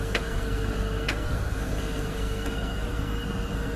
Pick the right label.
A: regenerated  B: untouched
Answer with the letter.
A